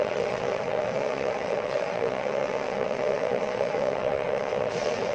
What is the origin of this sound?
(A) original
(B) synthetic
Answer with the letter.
B